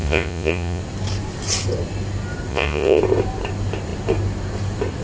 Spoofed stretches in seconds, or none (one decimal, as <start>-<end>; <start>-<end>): 0.0-0.8; 2.5-3.0